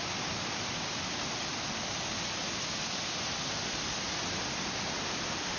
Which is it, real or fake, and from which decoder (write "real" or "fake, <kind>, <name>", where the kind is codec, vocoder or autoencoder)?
real